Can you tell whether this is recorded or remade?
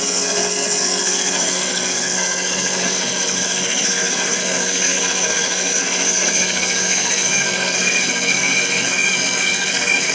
remade